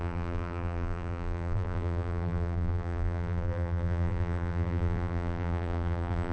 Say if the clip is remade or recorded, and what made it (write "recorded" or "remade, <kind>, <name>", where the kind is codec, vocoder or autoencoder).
remade, vocoder, BigVGAN v2